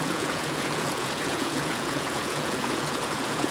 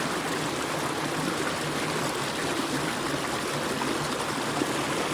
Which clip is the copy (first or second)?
first